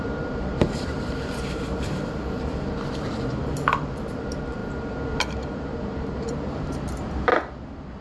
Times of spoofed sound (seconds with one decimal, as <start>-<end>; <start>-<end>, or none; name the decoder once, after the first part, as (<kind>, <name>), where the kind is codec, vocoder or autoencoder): 0.0-2.5 (vocoder, BigVGAN v2); 3.4-4.6; 5.3-7.3